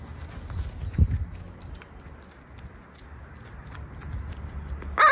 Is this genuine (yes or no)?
yes